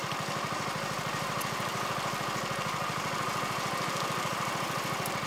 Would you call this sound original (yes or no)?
yes